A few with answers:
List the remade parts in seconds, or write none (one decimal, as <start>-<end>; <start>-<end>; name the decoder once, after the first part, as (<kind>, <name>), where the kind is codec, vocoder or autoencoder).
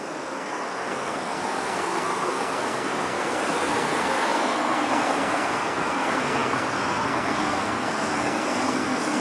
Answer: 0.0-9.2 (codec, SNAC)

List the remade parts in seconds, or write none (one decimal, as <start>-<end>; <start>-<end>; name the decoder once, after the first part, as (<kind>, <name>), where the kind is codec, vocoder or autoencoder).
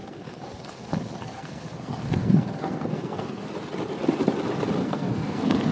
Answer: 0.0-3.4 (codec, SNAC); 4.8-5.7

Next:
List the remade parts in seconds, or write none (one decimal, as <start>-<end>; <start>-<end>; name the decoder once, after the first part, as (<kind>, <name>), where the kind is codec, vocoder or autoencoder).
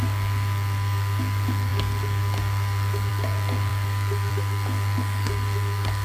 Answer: 0.0-6.0 (codec, DAC)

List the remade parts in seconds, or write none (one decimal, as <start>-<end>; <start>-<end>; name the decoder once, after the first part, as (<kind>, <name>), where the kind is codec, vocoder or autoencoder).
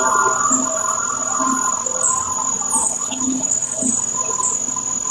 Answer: 2.8-3.9 (codec, HILCodec)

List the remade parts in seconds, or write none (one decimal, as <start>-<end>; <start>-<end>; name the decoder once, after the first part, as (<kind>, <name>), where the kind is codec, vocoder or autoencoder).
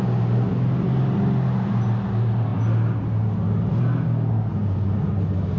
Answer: none